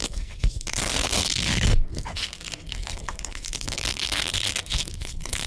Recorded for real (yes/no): no